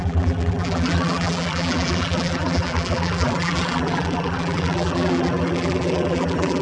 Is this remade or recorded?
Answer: remade